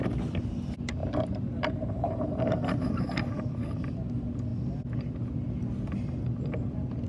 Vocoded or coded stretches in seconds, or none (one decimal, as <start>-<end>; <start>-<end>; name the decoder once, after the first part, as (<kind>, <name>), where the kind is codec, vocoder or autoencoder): 1.0-3.8 (vocoder, BigVGAN v2)